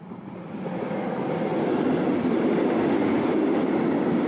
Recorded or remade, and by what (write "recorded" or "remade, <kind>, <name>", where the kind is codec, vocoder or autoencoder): recorded